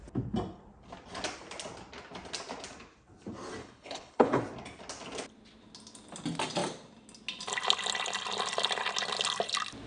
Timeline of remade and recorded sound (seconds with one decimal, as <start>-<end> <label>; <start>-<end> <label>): 0.0-3.6 recorded; 3.6-4.4 remade; 4.4-9.9 recorded